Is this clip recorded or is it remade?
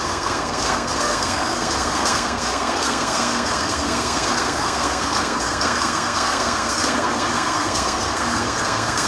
remade